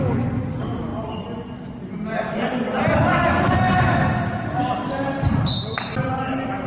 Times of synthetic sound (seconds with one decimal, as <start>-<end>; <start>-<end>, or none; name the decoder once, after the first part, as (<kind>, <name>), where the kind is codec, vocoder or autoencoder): none

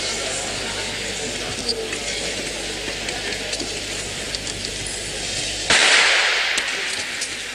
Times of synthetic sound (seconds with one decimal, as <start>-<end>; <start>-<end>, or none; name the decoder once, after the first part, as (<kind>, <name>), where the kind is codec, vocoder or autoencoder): 0.5-1.1 (codec, DAC)

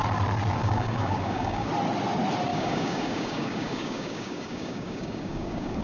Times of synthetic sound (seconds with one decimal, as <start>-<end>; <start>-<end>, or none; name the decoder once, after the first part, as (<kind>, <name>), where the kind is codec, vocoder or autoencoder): 0.6-1.7 (codec, DAC); 2.5-5.8

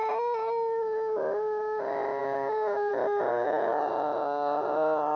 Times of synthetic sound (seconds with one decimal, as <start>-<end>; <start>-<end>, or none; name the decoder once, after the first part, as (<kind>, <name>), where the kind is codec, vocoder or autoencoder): 2.2-2.9 (codec, DAC); 3.3-3.9

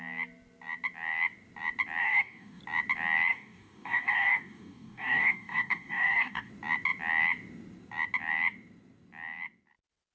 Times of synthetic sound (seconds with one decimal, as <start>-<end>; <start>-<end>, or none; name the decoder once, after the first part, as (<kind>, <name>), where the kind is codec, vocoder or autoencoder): 2.0-2.6 (codec, DAC); 3.3-6.5

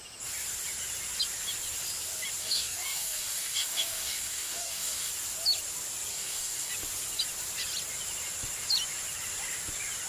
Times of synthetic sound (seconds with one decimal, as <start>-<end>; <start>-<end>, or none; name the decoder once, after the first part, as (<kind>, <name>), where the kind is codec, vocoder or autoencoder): 2.4-5.1 (codec, DAC); 6.1-6.7

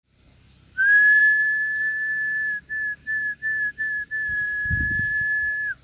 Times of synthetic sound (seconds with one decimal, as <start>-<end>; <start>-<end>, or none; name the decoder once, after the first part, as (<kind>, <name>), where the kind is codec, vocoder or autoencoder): 3.0-5.1 (codec, DAC)